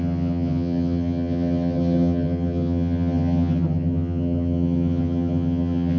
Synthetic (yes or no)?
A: yes